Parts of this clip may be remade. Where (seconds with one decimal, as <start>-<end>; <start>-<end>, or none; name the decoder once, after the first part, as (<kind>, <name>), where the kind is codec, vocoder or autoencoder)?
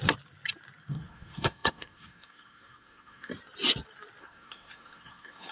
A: 0.9-3.3 (codec, SNAC); 4.2-5.5